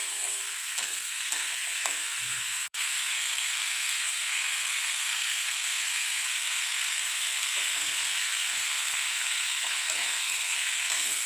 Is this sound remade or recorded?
remade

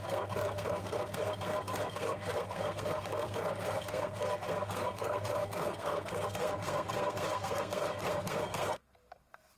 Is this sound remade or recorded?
remade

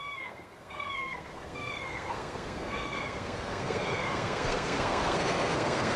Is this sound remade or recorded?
remade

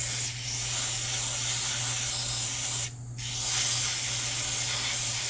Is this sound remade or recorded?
recorded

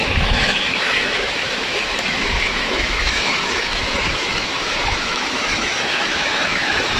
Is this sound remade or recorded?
remade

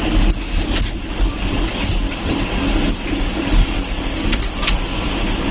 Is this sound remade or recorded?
recorded